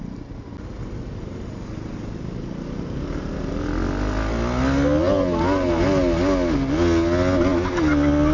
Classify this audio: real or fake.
real